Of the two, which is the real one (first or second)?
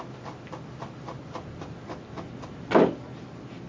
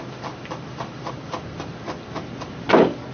first